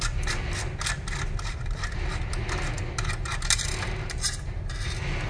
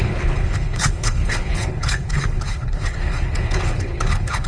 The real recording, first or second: first